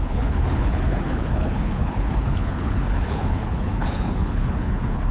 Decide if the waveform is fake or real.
fake